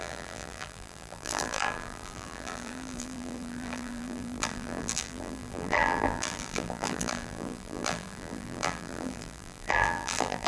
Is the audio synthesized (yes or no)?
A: yes